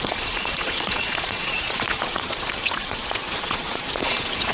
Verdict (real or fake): fake